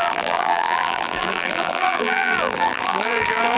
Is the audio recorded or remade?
remade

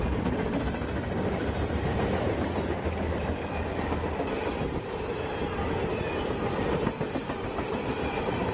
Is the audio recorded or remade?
remade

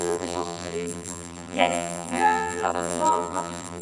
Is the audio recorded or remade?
remade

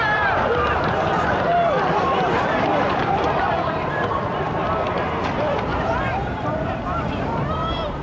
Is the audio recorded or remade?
remade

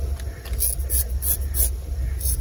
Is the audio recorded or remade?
recorded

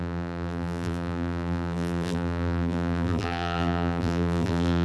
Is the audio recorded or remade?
remade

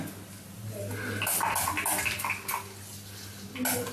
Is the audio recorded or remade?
recorded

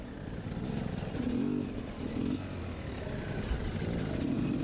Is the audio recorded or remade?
recorded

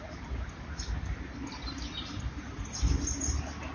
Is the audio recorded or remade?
recorded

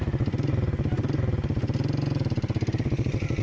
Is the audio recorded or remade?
recorded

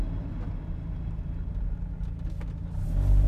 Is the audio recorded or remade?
recorded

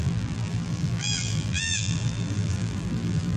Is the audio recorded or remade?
remade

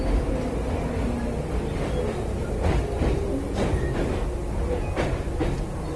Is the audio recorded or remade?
recorded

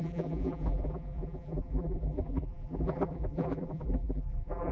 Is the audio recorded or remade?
remade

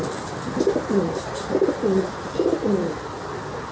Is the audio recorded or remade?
recorded